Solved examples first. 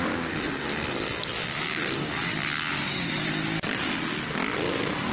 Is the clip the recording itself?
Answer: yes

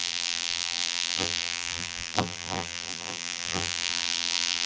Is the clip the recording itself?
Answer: no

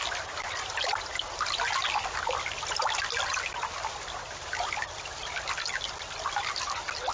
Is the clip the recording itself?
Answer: yes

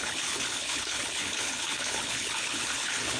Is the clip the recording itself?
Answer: no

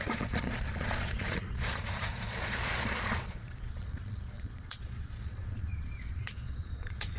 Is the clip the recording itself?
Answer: no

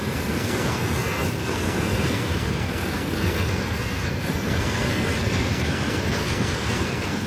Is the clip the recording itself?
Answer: no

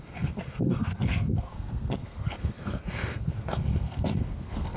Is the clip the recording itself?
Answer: no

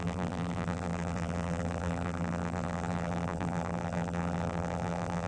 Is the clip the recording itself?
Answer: no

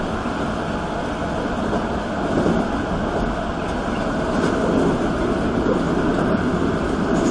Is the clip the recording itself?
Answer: yes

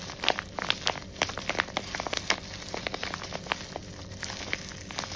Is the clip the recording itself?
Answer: yes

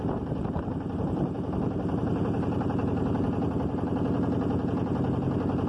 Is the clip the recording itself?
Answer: yes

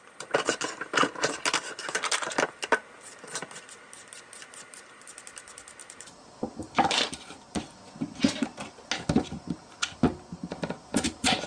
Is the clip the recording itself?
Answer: yes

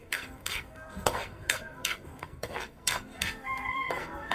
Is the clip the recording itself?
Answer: no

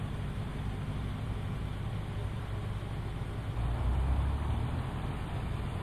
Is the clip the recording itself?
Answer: yes